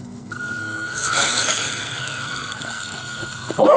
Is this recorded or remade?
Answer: remade